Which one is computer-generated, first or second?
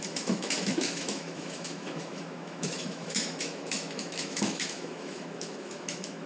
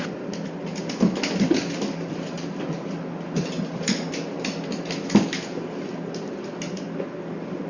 first